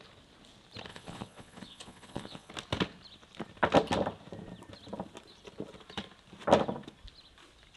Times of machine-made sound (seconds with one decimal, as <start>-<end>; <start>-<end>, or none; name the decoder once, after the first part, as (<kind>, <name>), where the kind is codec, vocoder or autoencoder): 0.9-2.5 (vocoder, Vocos)